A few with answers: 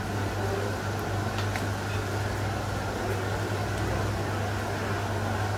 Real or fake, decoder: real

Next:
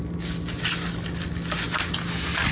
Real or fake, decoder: real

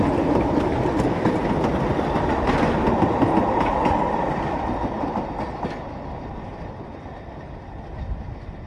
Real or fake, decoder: real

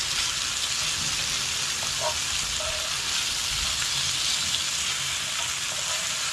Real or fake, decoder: real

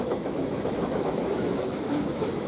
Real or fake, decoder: fake, autoencoder, DAC-VAE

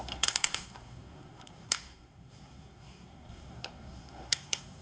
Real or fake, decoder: fake, codec, SNAC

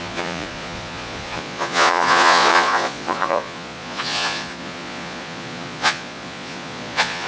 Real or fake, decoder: fake, vocoder, Vocos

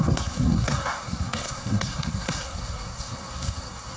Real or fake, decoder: fake, codec, SNAC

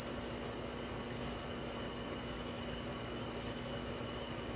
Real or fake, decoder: real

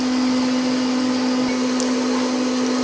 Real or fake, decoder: real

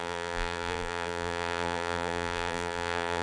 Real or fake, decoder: fake, vocoder, BigVGAN v2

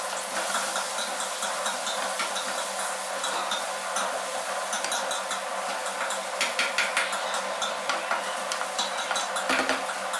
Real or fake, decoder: real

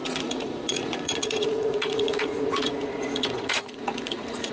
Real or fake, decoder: fake, vocoder, Vocos